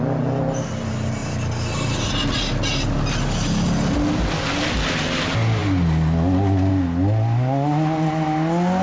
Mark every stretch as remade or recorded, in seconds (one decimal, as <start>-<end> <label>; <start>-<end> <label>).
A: 0.0-8.8 recorded